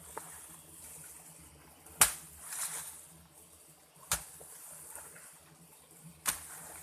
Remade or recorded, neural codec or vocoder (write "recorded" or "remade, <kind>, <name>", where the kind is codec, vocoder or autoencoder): recorded